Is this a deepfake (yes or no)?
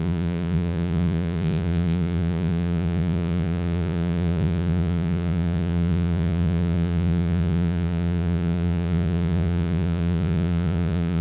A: yes